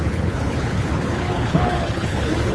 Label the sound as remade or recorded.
remade